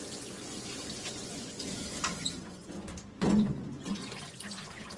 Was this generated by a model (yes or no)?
yes